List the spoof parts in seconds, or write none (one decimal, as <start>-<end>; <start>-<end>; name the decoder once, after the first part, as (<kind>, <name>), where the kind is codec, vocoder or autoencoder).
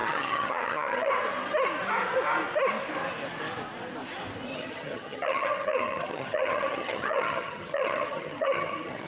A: 0.0-1.1 (vocoder, HiFi-GAN); 4.5-9.1